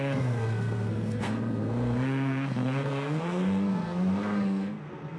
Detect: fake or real fake